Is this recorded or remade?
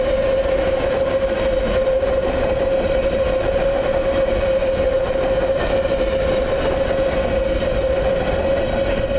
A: recorded